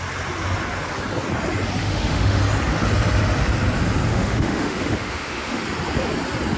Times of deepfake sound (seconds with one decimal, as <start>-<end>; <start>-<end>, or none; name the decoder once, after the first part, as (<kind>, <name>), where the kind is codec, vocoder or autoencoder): 1.8-2.4 (autoencoder, DAC-VAE); 4.1-5.6